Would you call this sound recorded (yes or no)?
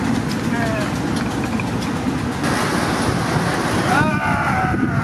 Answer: yes